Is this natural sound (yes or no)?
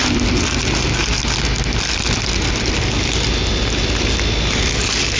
yes